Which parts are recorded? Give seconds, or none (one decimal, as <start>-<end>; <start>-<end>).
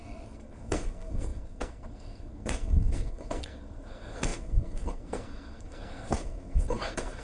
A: none